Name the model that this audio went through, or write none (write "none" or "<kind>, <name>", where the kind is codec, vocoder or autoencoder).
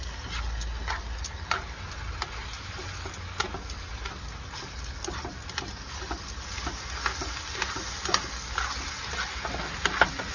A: none